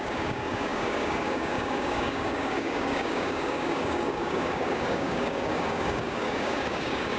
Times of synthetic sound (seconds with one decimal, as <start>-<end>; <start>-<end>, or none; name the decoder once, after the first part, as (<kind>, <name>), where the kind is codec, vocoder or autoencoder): 0.0-7.2 (codec, DAC)